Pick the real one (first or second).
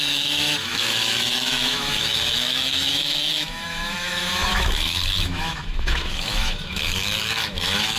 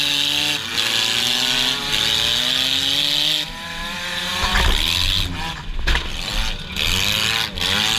second